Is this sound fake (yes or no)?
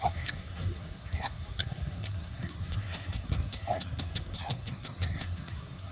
yes